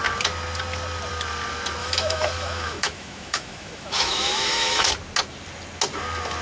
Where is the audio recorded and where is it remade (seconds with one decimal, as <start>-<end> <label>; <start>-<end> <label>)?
0.0-1.8 recorded; 1.8-4.9 remade; 4.9-6.4 recorded